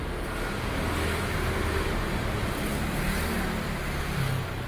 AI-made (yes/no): no